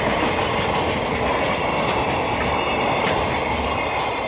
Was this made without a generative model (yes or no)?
yes